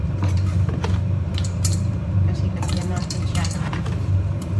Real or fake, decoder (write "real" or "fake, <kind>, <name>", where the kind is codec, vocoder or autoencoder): fake, vocoder, BigVGAN v2